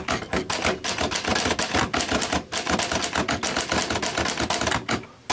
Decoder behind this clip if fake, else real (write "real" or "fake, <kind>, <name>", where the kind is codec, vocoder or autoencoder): real